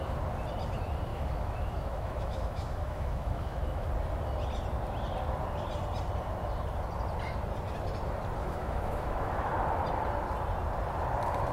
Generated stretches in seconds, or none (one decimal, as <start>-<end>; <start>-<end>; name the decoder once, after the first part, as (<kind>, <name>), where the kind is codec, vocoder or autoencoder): 1.1-3.9 (autoencoder, DAC-VAE); 8.4-9.5